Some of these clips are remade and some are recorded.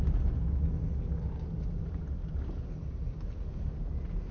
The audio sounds recorded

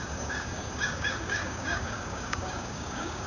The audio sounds remade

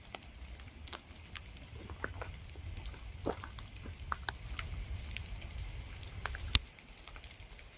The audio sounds remade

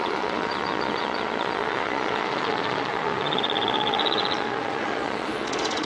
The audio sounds remade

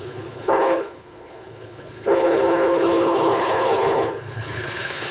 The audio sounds remade